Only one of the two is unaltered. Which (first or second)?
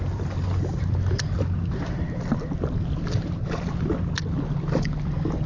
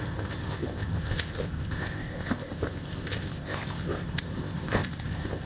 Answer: first